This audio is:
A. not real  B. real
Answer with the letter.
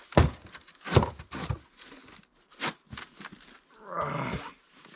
B